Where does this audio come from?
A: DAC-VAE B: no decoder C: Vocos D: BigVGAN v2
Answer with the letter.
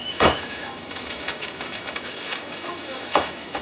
A